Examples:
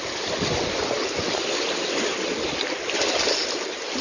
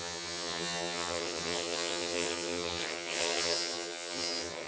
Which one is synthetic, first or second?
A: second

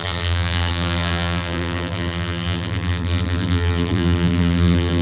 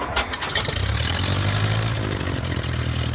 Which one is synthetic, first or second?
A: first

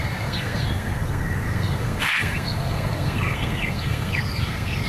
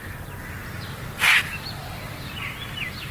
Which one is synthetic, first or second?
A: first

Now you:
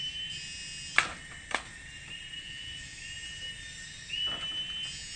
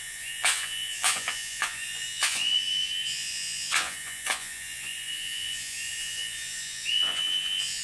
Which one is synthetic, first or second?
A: second